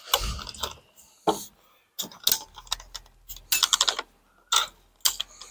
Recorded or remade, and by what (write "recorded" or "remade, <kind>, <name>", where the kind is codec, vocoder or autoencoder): recorded